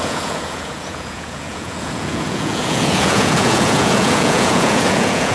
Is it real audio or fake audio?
fake